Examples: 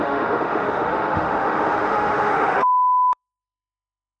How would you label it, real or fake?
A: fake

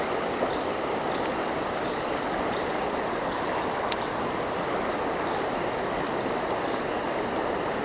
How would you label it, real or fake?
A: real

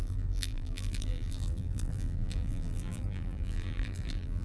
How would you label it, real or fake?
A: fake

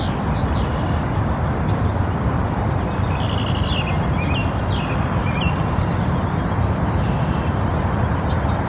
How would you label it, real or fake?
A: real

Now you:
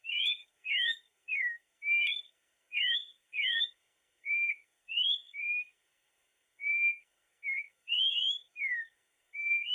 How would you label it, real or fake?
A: fake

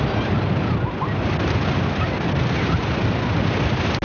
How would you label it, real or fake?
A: real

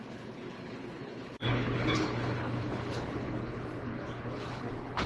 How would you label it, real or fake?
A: fake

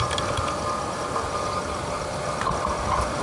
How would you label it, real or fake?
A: real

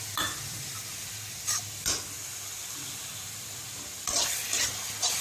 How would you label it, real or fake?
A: real